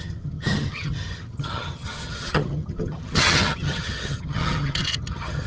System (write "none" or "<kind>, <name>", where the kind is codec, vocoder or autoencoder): vocoder, HiFi-GAN